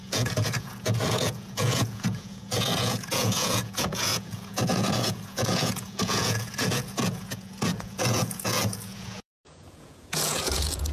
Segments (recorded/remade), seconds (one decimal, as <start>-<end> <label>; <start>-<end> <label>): 0.0-10.9 remade